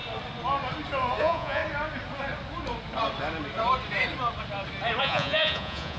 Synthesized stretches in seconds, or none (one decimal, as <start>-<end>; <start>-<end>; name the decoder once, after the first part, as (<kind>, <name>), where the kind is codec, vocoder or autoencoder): 1.2-1.6 (vocoder, Vocos); 5.0-6.0